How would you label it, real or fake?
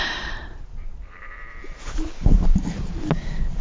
fake